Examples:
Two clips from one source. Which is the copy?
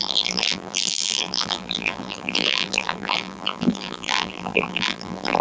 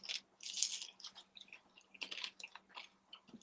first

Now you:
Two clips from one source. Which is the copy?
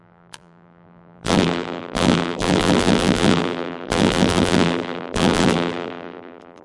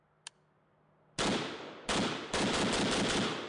first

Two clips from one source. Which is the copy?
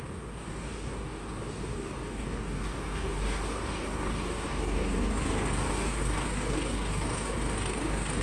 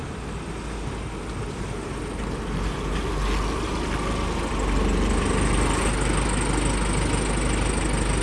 first